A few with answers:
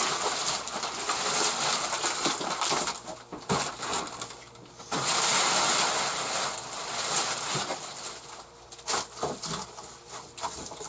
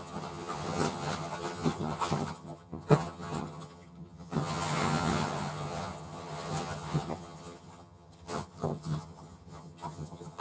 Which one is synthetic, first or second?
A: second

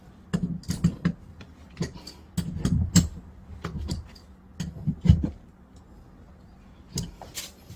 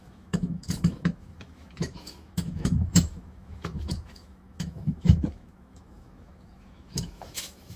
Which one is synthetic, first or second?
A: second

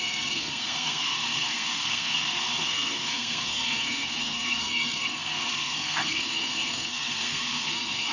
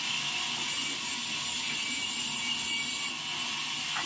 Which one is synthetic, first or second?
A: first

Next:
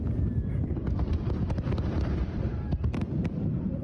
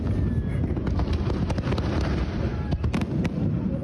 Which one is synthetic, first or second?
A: first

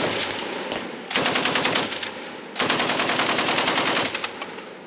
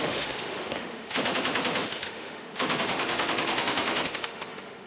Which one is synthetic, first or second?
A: second